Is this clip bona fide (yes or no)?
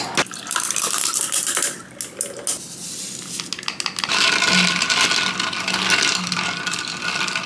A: yes